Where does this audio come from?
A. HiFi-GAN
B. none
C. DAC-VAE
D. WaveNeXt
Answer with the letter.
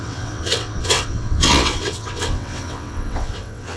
D